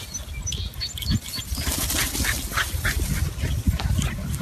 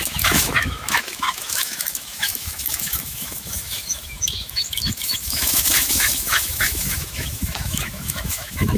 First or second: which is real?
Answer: first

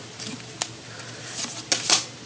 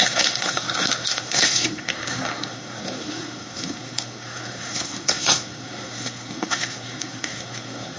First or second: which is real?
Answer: first